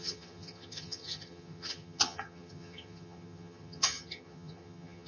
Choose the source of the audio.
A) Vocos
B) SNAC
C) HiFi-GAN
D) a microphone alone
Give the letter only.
C